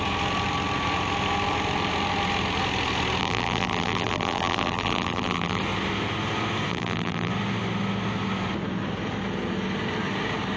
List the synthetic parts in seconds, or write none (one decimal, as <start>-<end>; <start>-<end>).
3.2-5.6; 6.7-7.3